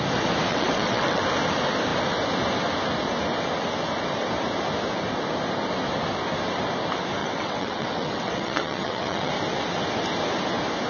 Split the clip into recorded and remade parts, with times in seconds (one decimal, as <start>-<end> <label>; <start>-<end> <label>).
0.0-0.5 recorded; 0.5-1.2 remade; 1.2-7.2 recorded; 7.2-9.3 remade; 9.3-10.9 recorded